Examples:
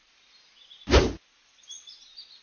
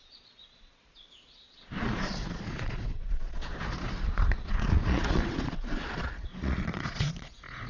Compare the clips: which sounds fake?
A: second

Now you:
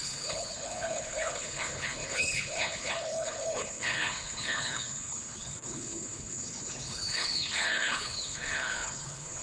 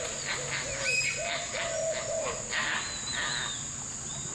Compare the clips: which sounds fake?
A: first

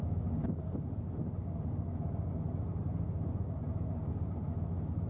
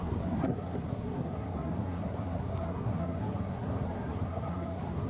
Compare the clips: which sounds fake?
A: second